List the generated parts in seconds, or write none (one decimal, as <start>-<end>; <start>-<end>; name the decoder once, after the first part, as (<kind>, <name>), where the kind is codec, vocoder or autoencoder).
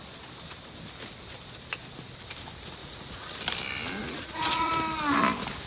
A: 2.8-3.4 (vocoder, Vocos); 4.0-4.7